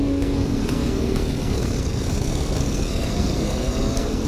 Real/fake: fake